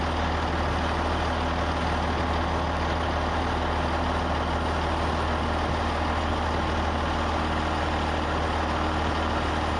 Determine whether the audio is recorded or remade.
recorded